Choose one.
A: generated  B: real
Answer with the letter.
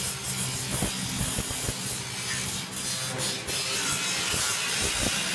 B